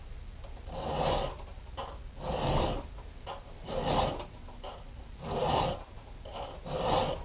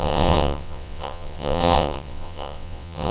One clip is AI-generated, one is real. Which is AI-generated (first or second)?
second